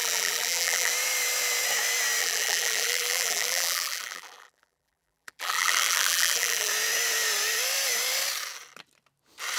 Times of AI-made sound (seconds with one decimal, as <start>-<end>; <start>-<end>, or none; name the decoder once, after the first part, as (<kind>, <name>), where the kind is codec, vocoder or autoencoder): 0.0-0.9 (vocoder, BigVGAN v2); 2.2-6.7